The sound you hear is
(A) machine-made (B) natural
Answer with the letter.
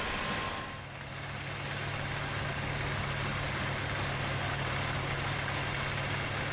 B